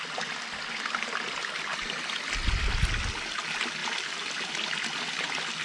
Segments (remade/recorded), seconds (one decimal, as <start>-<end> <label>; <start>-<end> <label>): 0.0-5.6 recorded